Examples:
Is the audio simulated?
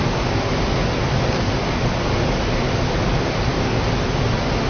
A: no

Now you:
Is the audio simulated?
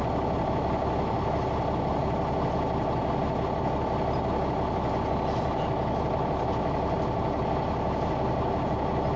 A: no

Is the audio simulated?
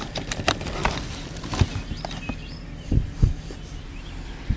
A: yes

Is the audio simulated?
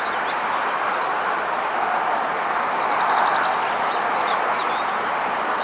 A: no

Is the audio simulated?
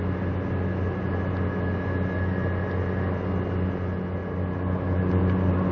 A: no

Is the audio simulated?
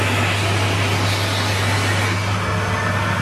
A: no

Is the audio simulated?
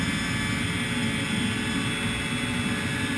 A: no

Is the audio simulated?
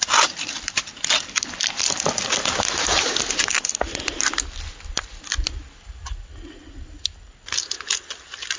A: no